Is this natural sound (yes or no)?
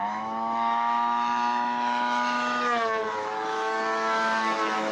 no